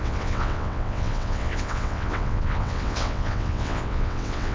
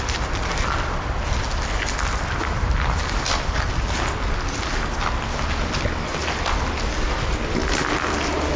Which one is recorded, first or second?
second